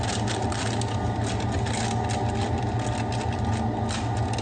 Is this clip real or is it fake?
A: real